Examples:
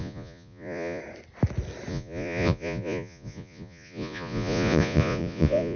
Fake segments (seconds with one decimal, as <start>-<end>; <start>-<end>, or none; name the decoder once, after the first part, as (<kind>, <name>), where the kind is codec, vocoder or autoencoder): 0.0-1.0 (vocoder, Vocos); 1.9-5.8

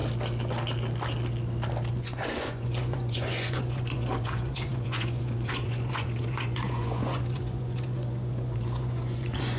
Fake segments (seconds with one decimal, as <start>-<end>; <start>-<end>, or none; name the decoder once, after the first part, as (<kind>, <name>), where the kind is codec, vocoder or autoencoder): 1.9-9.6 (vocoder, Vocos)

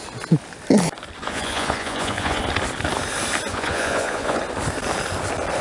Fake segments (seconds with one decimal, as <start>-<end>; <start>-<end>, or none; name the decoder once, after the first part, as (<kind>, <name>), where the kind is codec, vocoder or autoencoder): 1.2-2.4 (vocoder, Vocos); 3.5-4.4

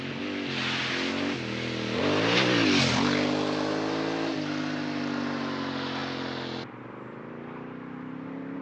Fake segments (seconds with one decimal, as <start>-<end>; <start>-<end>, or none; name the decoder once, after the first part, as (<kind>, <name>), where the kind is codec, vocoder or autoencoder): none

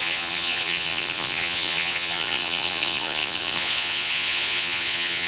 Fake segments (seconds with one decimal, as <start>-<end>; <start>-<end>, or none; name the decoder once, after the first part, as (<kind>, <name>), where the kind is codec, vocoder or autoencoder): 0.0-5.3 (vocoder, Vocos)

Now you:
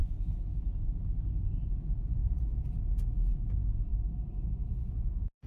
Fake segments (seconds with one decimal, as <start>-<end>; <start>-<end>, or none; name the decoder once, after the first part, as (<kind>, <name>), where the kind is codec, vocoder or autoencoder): 1.7-3.9 (vocoder, Vocos); 4.9-5.5

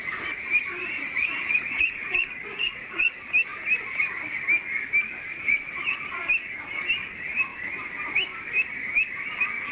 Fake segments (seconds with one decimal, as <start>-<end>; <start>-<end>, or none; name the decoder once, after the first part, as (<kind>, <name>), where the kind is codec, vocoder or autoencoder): 0.8-3.1 (vocoder, Vocos); 5.3-6.1

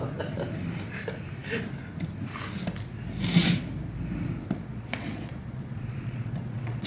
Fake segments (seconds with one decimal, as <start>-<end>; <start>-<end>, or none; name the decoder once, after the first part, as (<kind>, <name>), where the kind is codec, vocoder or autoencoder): 4.7-6.9 (vocoder, Vocos)